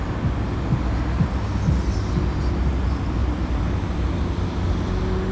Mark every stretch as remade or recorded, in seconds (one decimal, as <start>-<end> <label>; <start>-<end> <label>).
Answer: 0.0-5.3 recorded